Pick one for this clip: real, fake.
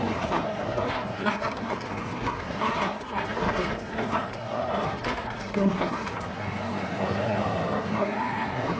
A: fake